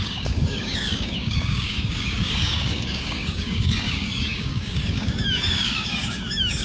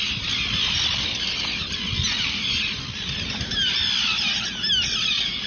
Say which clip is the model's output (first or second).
first